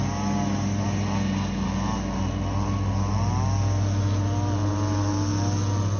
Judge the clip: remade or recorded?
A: recorded